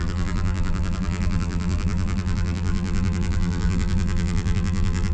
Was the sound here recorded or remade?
remade